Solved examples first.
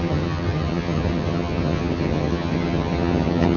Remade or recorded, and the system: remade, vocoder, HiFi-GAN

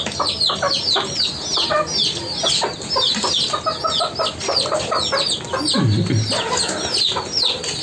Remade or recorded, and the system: recorded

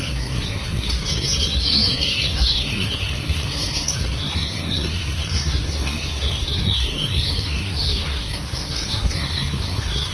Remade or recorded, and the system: remade, codec, SNAC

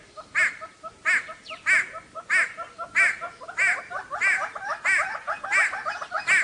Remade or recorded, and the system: recorded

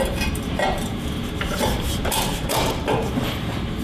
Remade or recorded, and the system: remade, vocoder, BigVGAN v2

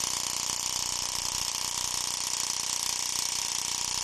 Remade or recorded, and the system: recorded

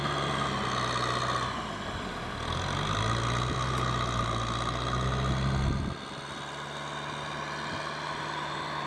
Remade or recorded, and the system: recorded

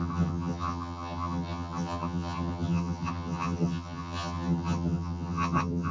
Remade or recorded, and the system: remade, vocoder, HiFi-GAN